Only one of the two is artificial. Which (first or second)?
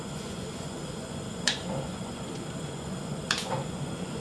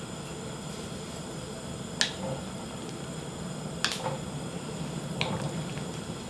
first